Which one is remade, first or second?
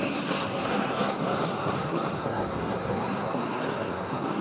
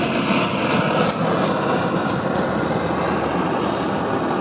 first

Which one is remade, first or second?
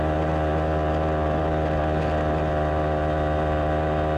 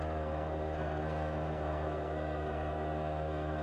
second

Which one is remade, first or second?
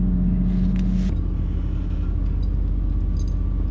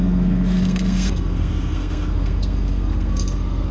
second